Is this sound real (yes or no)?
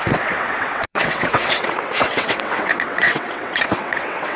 no